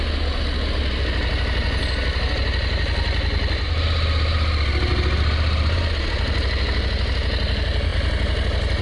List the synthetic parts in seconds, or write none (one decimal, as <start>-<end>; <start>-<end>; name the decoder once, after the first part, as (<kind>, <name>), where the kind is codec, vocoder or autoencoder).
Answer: none